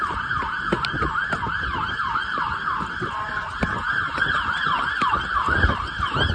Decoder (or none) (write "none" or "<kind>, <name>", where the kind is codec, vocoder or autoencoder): none